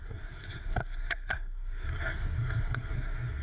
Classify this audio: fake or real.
fake